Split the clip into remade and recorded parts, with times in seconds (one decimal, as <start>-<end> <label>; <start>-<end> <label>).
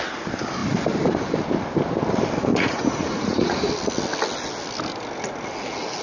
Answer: 0.0-2.5 recorded; 2.5-3.7 remade; 3.7-6.0 recorded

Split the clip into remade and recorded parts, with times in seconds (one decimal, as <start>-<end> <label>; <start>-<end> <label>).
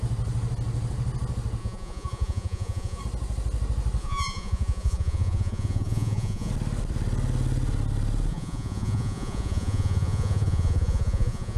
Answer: 0.0-1.6 recorded; 1.6-3.0 remade; 3.0-4.0 recorded; 4.0-6.5 remade; 6.5-8.3 recorded; 8.3-11.6 remade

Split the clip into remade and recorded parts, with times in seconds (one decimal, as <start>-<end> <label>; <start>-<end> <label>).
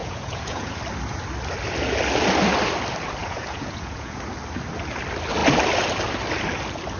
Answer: 0.0-0.8 remade; 0.8-3.2 recorded; 3.2-4.2 remade; 4.2-7.0 recorded